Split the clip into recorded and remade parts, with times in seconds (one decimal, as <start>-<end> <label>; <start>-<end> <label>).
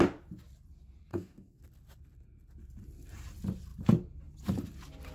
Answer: 0.0-1.1 recorded; 1.1-1.6 remade; 1.6-5.1 recorded